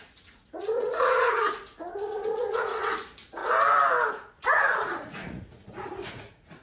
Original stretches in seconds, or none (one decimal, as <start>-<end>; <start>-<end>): 3.4-4.1